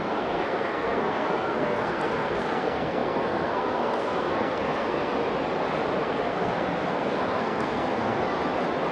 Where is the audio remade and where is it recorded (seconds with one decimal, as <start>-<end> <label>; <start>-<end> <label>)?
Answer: 0.0-5.2 remade; 5.2-6.0 recorded; 6.0-8.2 remade; 8.2-8.9 recorded